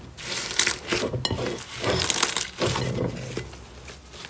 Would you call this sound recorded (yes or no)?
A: yes